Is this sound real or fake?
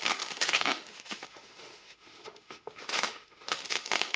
fake